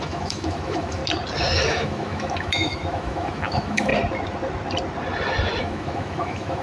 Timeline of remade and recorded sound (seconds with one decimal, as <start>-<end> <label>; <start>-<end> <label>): 0.0-1.0 remade; 1.0-1.7 recorded; 1.7-3.9 remade; 3.9-5.6 recorded; 5.6-6.6 remade